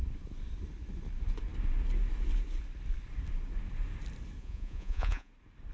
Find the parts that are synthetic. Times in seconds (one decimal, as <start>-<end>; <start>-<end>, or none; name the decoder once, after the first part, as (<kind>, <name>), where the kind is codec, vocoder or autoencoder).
4.4-5.3 (vocoder, Vocos)